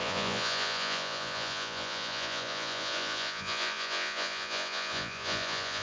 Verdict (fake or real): fake